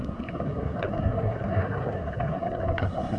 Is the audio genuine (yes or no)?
no